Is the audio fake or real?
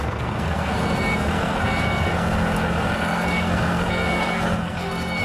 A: fake